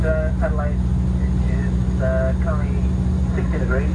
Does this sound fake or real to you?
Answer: real